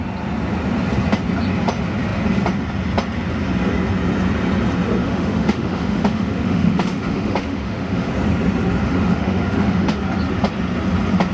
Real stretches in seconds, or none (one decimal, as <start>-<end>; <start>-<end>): 0.0-5.0; 8.1-8.8; 10.0-11.3